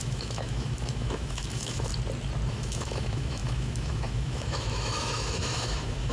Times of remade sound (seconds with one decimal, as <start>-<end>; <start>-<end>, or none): 0.0-1.9; 2.5-6.1